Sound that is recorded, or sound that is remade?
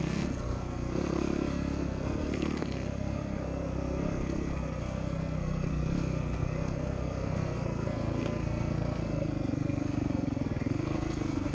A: remade